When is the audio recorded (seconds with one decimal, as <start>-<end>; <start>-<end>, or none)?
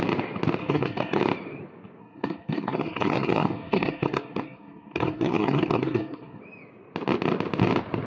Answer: 0.0-0.6; 1.2-2.0; 6.4-8.1